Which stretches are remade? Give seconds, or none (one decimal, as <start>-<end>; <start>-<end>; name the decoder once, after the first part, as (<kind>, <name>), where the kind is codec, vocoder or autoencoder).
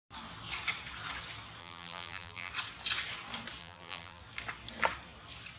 1.6-2.5 (vocoder, BigVGAN v2); 3.6-4.2